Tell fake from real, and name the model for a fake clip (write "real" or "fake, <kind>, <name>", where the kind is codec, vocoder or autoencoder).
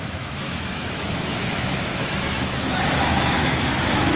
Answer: fake, autoencoder, DAC-VAE